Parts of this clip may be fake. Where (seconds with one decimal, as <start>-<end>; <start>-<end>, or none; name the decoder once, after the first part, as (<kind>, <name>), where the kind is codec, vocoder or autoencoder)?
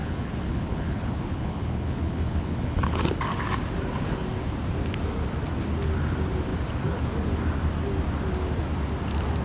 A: 0.0-3.0 (codec, HILCodec)